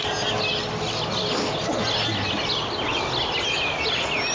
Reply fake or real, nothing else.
real